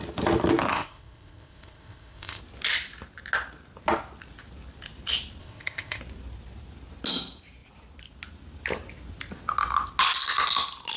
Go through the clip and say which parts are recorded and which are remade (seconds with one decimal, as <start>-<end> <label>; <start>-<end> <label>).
0.0-0.7 recorded; 0.7-2.4 remade; 2.4-5.4 recorded; 5.4-6.0 remade; 6.0-11.0 recorded